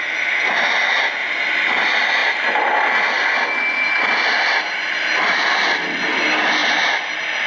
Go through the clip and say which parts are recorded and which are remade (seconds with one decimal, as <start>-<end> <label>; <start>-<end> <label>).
0.0-7.5 recorded